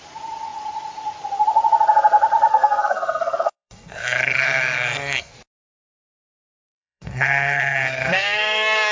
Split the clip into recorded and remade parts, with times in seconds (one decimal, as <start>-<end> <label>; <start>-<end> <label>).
0.0-2.5 recorded; 2.5-5.3 remade; 5.3-6.2 recorded; 6.2-8.9 remade